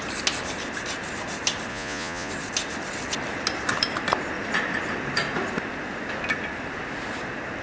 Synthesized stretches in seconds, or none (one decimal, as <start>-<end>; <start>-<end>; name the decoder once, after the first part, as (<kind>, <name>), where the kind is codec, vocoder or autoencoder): 1.7-2.3 (vocoder, Vocos)